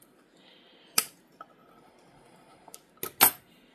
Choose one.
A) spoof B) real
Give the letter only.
B